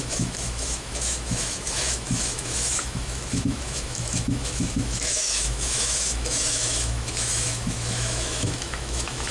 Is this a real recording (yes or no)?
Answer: no